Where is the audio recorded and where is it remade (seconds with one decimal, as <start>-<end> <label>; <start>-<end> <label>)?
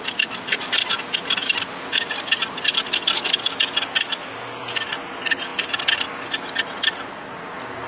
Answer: 0.0-7.9 recorded